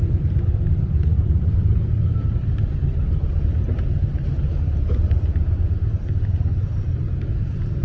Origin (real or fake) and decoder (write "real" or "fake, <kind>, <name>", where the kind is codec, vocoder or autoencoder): fake, vocoder, BigVGAN v2